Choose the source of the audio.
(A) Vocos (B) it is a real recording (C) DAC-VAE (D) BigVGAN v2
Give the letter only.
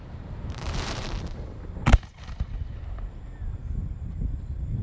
D